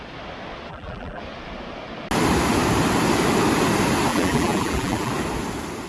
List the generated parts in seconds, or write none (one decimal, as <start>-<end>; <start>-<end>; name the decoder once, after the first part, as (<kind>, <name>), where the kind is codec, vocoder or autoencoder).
0.7-1.2 (vocoder, BigVGAN v2); 4.1-5.1